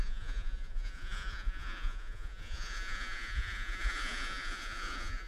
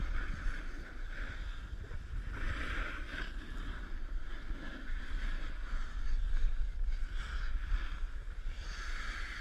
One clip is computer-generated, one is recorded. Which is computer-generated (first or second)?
first